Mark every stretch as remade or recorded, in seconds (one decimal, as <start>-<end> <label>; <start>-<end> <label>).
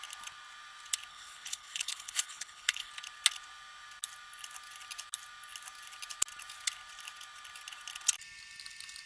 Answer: 0.0-1.1 recorded; 1.1-2.9 remade; 2.9-9.1 recorded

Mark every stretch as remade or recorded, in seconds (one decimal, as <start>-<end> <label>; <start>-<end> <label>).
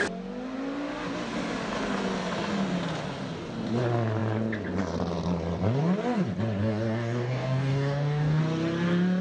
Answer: 0.0-6.6 recorded; 6.6-8.4 remade; 8.4-9.2 recorded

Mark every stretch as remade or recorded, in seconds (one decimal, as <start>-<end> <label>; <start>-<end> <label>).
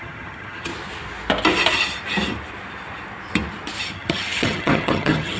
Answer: 0.0-0.7 remade; 0.7-3.8 recorded; 3.8-5.4 remade